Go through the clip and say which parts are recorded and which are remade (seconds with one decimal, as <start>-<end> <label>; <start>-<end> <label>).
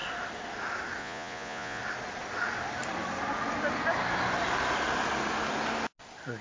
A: 0.0-1.0 recorded; 1.0-1.8 remade; 1.8-6.4 recorded